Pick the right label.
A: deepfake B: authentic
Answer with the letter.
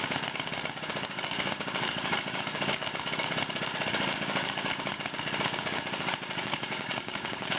A